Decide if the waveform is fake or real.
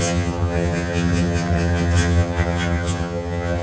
fake